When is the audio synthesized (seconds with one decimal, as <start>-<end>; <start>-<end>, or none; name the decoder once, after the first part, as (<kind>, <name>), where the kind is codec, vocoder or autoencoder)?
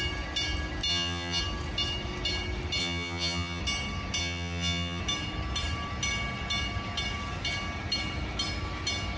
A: 0.9-1.4 (vocoder, HiFi-GAN); 2.8-3.6; 4.2-5.0